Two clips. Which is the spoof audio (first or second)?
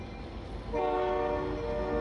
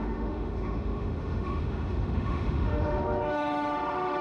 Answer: second